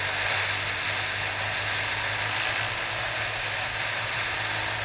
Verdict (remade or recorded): recorded